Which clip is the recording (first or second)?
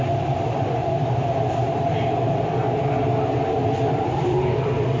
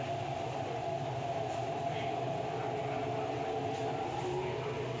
second